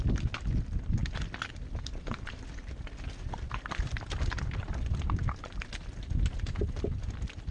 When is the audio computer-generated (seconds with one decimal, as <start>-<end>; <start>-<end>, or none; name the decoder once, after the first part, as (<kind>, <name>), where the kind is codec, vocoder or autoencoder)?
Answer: none

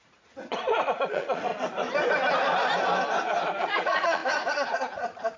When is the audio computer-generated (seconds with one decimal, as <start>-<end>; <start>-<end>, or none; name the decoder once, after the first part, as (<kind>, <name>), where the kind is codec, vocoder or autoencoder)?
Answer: 0.0-1.5 (vocoder, Vocos); 3.6-5.4

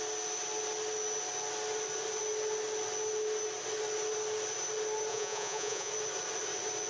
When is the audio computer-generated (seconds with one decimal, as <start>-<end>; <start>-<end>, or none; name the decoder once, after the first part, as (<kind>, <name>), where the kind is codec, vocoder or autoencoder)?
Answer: 5.1-5.9 (vocoder, Vocos)

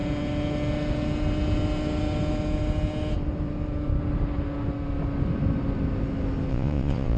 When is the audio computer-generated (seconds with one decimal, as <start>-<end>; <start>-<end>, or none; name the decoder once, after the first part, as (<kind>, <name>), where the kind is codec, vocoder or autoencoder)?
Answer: 6.5-7.2 (vocoder, Vocos)